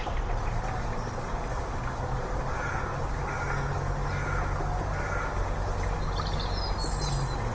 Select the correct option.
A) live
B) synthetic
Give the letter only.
A